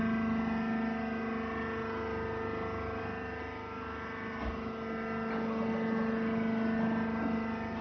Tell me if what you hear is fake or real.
real